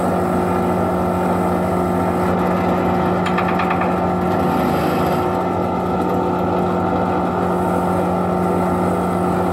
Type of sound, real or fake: real